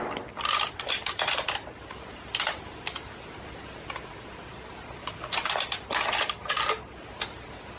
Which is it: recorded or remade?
recorded